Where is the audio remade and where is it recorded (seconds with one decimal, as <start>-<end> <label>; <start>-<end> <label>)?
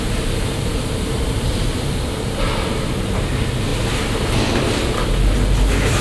0.0-3.7 remade; 3.7-6.0 recorded